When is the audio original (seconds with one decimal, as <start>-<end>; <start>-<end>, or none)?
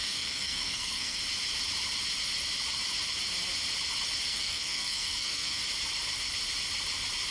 1.2-4.3; 5.6-7.3